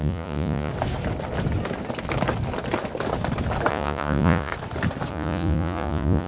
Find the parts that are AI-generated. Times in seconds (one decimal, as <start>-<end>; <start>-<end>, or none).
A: 0.0-0.7; 3.7-4.5; 5.1-6.3